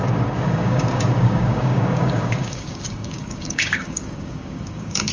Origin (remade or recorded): remade